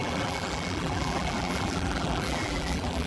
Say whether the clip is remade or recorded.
remade